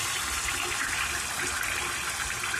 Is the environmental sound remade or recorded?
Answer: recorded